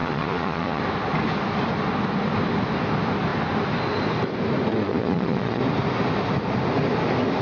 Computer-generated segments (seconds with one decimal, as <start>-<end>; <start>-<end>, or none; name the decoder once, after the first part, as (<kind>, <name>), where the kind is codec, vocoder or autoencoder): 0.0-0.8 (vocoder, Vocos); 4.7-5.6

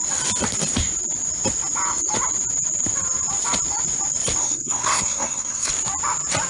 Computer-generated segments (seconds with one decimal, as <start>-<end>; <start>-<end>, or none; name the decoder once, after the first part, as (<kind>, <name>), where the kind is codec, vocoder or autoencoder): 4.4-5.7 (codec, SNAC)

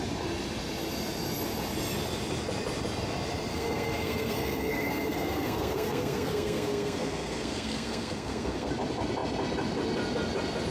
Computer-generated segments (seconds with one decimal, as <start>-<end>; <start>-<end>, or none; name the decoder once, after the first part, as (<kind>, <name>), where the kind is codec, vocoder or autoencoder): 3.5-8.7 (codec, SNAC)

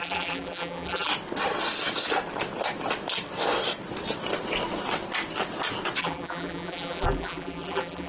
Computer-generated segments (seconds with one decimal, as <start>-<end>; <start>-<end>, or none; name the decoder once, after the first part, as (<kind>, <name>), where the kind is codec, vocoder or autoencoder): 0.0-1.1 (vocoder, BigVGAN v2); 6.0-8.1

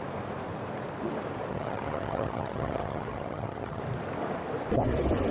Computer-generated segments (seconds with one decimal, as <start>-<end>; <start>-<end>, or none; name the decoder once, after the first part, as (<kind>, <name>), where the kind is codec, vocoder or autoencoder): 1.5-3.8 (vocoder, HiFi-GAN)

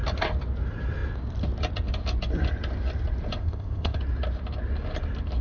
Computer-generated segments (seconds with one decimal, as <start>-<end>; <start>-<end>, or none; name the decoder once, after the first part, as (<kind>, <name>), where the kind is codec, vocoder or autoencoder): 3.4-4.0 (codec, ZipCodec)

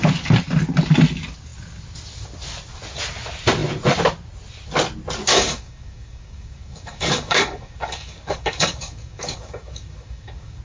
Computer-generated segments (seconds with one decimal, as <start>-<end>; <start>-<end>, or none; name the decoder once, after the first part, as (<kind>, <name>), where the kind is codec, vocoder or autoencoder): 5.3-10.6 (codec, DAC)